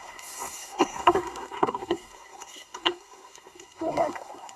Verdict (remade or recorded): remade